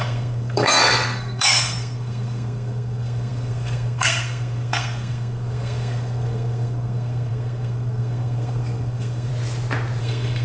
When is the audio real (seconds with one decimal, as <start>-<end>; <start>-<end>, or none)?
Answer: 9.3-10.0